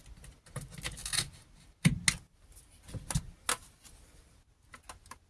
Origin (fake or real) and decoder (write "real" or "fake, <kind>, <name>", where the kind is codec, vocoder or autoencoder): real